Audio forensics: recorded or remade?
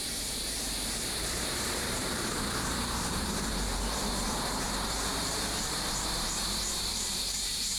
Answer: remade